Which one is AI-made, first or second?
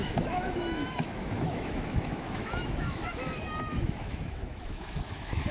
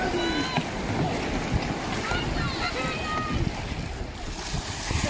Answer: first